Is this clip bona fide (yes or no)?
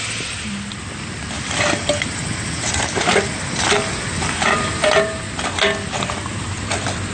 yes